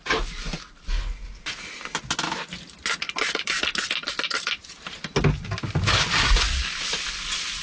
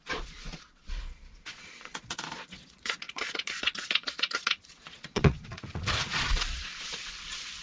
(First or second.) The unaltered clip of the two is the first